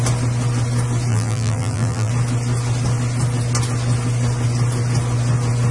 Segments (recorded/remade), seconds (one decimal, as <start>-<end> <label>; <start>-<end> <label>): 0.0-1.1 recorded; 1.1-2.1 remade; 2.1-5.7 recorded

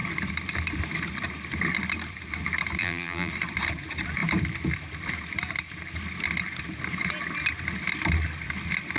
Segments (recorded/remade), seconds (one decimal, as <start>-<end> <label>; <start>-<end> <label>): 0.0-2.8 recorded; 2.8-3.3 remade; 3.3-9.0 recorded

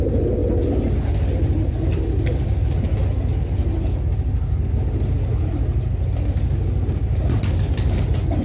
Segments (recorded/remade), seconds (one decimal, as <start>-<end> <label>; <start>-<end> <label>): 0.0-8.4 recorded

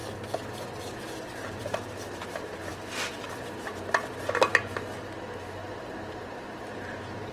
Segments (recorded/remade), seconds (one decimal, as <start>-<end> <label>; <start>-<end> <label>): 0.0-1.6 recorded; 1.6-2.3 remade; 2.3-2.7 recorded; 2.7-3.3 remade; 3.3-5.6 recorded; 5.6-7.3 remade

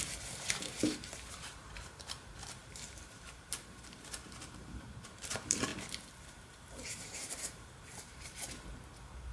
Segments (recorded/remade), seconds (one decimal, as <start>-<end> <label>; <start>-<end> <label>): 0.0-5.7 remade; 5.7-6.2 recorded; 6.2-9.3 remade